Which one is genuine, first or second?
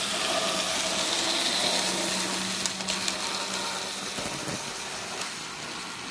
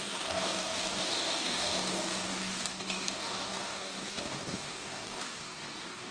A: first